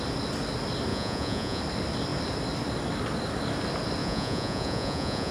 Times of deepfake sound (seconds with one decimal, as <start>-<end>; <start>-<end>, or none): 0.9-1.6; 4.0-5.3